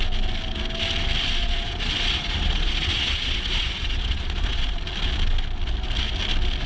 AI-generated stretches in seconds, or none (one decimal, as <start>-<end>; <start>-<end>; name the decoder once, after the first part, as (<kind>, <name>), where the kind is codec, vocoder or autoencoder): 1.4-4.8 (vocoder, Vocos)